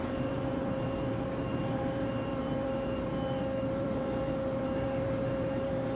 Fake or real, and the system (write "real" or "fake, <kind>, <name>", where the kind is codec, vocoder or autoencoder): fake, vocoder, BigVGAN v2